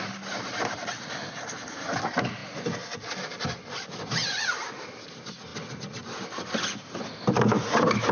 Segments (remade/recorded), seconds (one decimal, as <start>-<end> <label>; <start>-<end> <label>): 0.0-8.1 recorded